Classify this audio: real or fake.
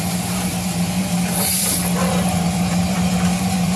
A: fake